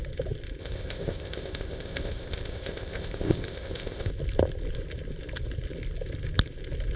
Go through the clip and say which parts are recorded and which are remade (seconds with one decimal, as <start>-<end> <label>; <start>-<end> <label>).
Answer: 0.0-0.6 recorded; 0.6-4.1 remade; 4.1-7.0 recorded